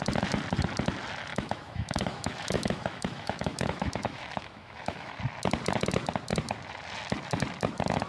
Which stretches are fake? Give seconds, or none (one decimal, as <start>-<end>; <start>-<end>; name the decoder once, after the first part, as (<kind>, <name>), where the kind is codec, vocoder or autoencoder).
1.3-5.2 (autoencoder, DAC-VAE)